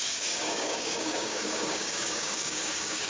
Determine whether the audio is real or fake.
fake